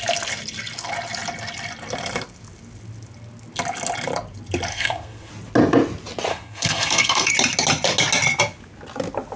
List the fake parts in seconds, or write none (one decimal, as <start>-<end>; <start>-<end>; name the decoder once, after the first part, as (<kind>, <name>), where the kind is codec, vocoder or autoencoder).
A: 4.7-5.3 (codec, SNAC); 6.3-7.3